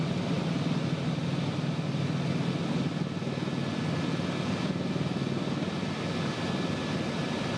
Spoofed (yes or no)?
no